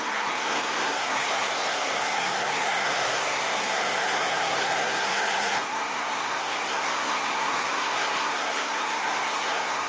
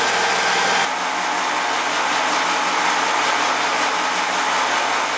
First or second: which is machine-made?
first